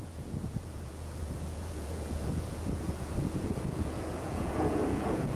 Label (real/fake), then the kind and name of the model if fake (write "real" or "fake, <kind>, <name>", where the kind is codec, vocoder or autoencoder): fake, vocoder, Vocos